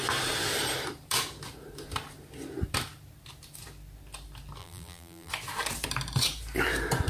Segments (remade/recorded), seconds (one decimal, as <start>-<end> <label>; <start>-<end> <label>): 0.0-4.6 recorded; 4.6-5.3 remade; 5.3-7.1 recorded